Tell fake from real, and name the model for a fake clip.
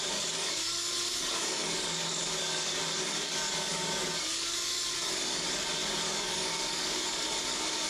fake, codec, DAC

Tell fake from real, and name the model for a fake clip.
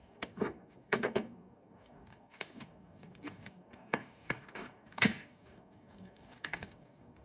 fake, codec, DAC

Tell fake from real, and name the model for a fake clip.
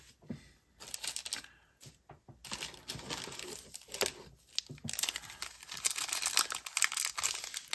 real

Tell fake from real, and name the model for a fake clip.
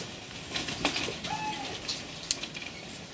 real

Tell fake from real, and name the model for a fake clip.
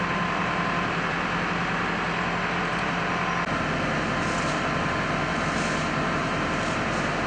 real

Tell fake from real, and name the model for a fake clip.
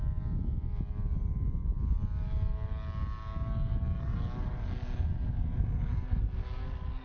real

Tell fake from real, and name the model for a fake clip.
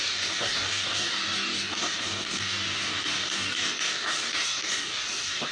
fake, codec, DAC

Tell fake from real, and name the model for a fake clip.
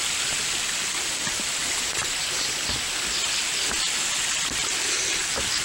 real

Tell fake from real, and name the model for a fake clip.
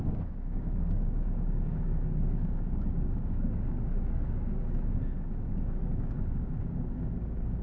fake, codec, DAC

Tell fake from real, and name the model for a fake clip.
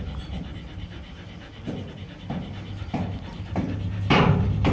real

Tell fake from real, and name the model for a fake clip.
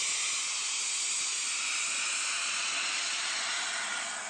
real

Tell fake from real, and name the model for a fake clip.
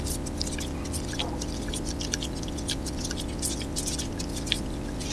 real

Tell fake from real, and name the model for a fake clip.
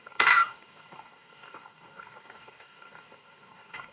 fake, codec, DAC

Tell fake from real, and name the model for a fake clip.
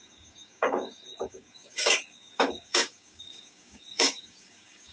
fake, codec, DAC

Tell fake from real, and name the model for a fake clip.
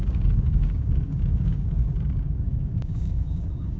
fake, codec, DAC